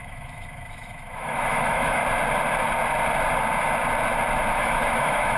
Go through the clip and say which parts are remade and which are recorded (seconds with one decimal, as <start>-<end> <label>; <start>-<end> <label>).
0.0-2.0 remade; 2.0-4.5 recorded; 4.5-5.4 remade